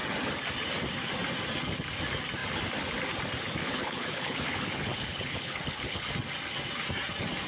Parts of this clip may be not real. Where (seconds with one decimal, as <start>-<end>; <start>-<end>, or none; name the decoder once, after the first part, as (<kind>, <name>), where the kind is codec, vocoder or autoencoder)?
3.6-6.1 (codec, HILCodec)